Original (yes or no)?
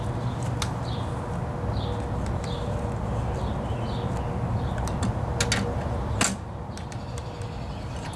yes